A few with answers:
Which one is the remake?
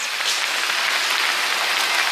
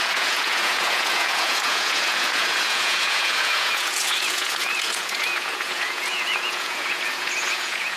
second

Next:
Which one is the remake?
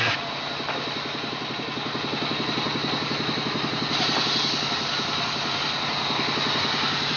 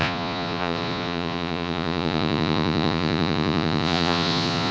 second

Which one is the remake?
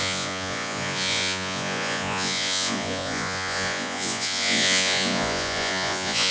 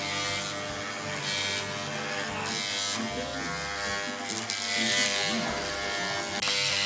first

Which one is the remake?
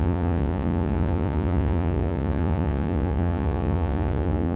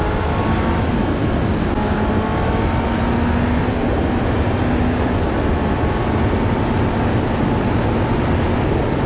first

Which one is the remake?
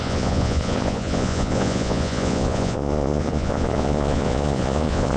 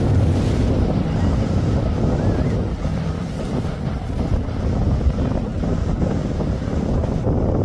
first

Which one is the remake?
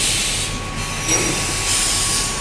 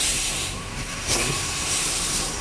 second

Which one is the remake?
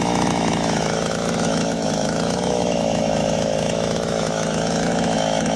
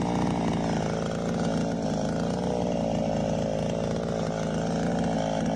first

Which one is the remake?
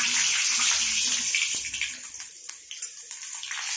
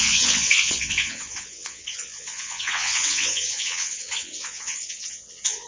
second